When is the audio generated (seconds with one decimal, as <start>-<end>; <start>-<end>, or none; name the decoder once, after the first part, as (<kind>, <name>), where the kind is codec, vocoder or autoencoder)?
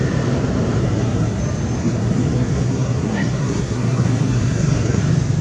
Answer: 0.8-1.4 (codec, SNAC); 1.8-5.0